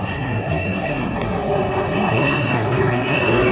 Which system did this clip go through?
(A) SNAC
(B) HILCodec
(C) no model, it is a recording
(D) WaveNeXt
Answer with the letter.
A